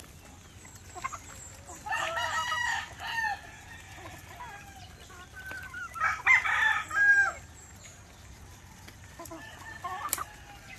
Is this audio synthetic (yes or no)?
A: no